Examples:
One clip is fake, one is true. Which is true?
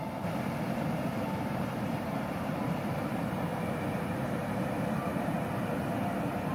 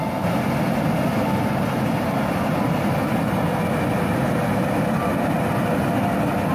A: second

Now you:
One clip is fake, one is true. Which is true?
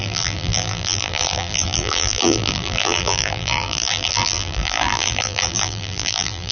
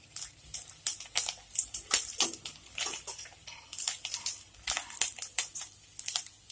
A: second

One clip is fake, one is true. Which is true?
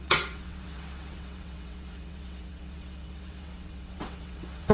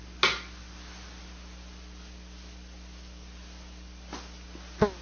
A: second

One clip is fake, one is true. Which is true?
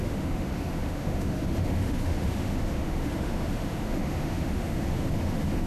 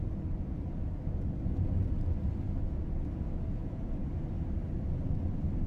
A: second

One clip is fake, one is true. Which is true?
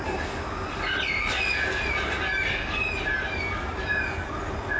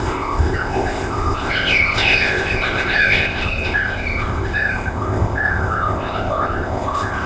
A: first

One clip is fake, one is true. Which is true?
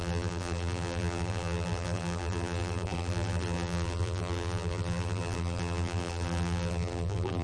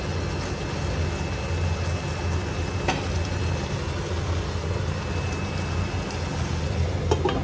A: second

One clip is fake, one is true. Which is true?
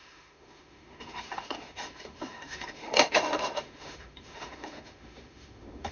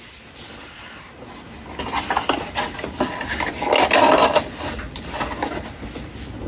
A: second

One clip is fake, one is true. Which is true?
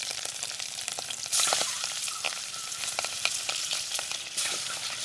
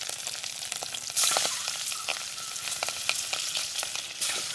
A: second